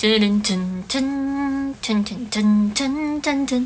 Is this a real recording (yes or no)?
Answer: yes